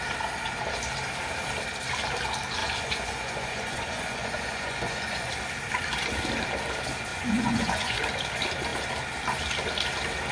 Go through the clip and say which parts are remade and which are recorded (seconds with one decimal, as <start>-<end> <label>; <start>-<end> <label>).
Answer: 0.0-2.6 recorded; 2.6-5.3 remade; 5.3-7.1 recorded; 7.1-8.0 remade; 8.0-10.3 recorded